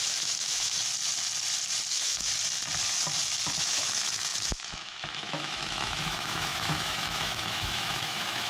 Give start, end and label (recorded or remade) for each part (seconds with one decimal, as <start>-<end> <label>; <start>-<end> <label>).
0.0-0.8 remade; 0.8-1.9 recorded; 1.9-2.3 remade; 2.3-3.6 recorded; 3.6-8.5 remade